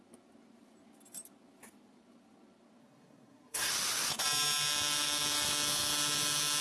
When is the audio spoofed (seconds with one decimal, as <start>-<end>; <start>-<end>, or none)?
2.8-3.7